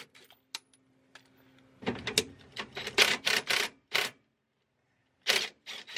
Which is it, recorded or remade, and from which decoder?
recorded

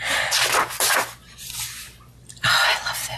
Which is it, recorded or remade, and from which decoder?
recorded